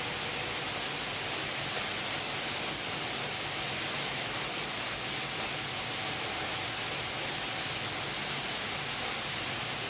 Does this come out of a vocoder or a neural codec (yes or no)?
no